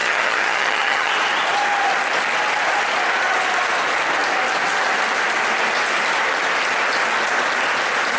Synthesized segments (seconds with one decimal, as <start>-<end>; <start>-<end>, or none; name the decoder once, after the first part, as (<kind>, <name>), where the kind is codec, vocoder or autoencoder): 0.0-1.1 (vocoder, HiFi-GAN)